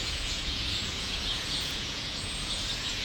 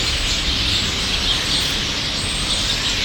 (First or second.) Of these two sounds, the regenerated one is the first